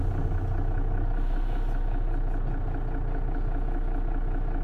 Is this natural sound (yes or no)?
yes